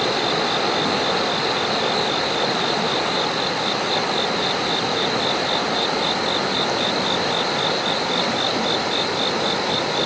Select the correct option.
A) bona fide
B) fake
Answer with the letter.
A